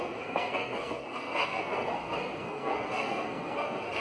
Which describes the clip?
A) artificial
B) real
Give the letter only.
A